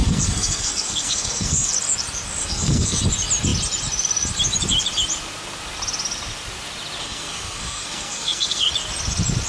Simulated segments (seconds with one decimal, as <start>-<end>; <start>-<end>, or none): 0.0-1.7; 2.4-3.0; 7.0-8.7